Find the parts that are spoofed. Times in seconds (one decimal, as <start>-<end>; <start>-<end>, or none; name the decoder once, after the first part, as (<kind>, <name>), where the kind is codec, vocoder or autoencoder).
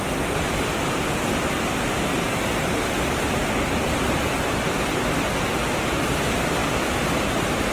none